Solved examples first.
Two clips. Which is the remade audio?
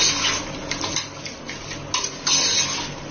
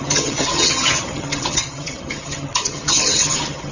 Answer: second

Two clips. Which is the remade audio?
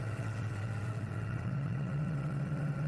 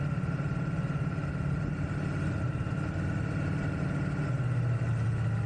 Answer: first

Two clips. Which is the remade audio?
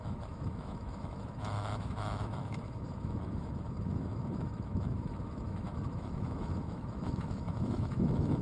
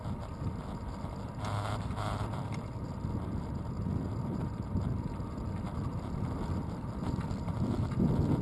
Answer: first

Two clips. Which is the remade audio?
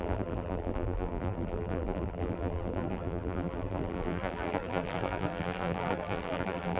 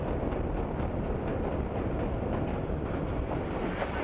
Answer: first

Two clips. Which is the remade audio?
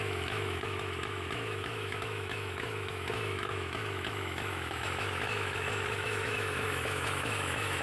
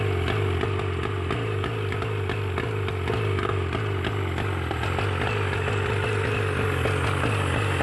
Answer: first